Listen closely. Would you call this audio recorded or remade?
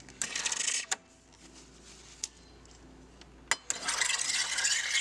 recorded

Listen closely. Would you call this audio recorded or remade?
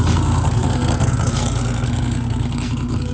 remade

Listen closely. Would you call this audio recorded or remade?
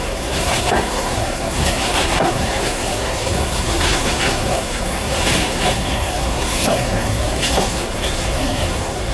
remade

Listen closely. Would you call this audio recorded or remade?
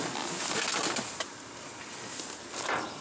recorded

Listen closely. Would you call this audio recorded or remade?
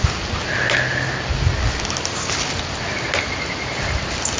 recorded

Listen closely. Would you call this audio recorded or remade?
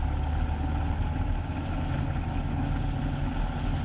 recorded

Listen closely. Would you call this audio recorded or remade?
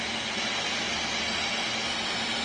recorded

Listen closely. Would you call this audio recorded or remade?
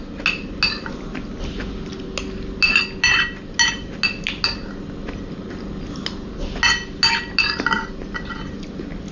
recorded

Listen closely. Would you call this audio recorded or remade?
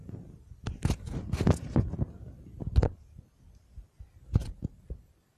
recorded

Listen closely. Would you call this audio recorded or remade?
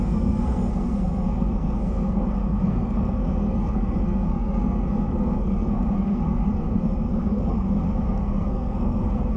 remade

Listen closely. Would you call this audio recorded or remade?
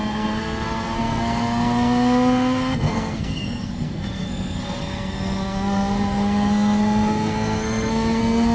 remade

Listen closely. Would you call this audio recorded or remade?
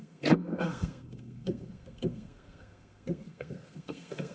remade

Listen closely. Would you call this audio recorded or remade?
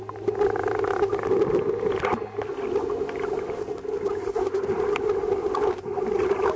recorded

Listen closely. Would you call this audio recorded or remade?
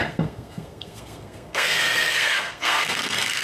remade